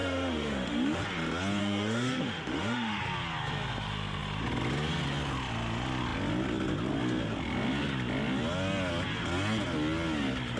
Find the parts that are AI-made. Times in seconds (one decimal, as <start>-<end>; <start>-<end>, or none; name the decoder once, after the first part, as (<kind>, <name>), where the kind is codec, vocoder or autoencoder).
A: 0.0-1.0 (autoencoder, DAC-VAE); 1.6-3.0